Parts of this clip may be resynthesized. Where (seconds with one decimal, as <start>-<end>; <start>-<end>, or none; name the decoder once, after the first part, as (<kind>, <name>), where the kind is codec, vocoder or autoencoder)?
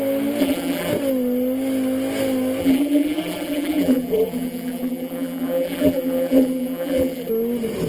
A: 0.4-0.9 (vocoder, BigVGAN v2); 2.6-7.3